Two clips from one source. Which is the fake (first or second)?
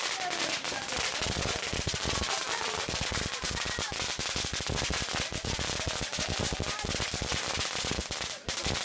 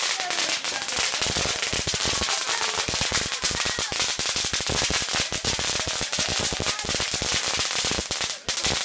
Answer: first